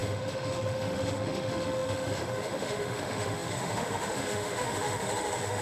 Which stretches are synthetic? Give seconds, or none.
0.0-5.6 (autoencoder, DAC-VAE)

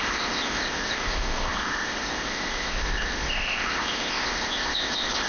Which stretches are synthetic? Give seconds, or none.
0.0-5.3 (codec, ZipCodec)